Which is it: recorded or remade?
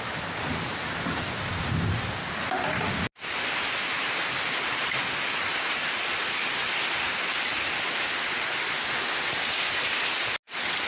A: recorded